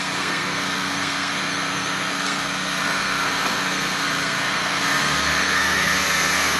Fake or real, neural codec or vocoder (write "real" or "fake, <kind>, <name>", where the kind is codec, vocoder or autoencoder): fake, codec, SNAC